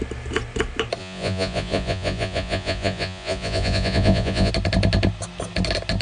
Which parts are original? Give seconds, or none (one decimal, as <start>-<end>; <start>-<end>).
0.0-1.0; 4.5-6.0